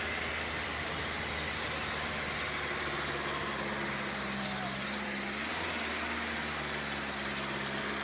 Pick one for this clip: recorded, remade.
recorded